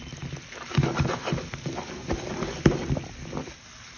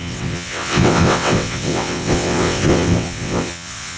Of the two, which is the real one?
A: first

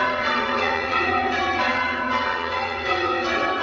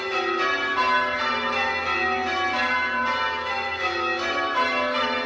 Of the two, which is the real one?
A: second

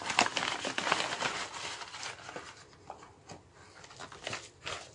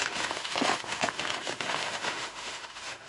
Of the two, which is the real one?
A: first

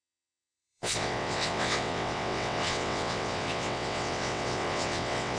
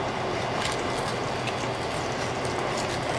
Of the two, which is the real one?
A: second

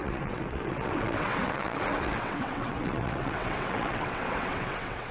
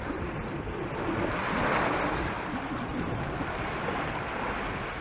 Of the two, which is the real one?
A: second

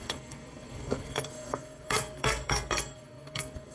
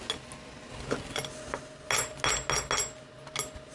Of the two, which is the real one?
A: second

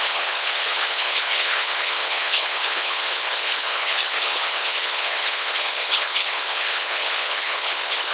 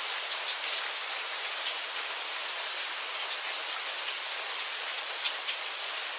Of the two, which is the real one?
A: second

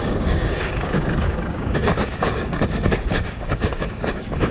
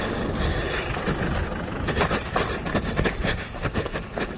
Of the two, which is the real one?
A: second